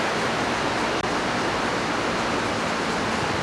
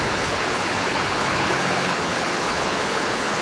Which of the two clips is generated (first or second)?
second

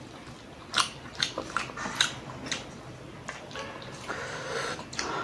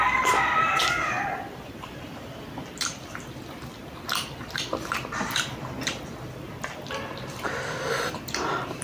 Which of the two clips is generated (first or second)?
second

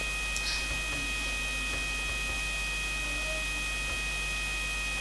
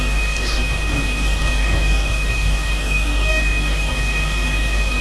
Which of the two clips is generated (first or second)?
second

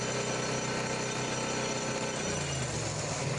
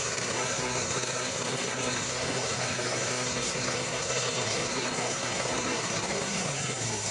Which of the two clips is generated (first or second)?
second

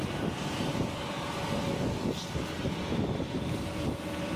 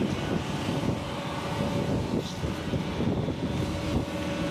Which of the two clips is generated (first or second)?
first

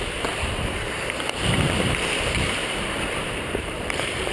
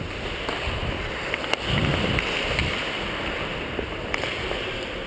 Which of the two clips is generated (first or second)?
first